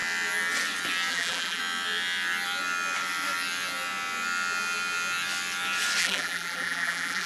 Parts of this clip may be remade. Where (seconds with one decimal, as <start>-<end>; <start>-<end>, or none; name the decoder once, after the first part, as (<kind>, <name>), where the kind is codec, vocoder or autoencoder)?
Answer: 1.1-1.6 (vocoder, BigVGAN v2); 6.0-7.3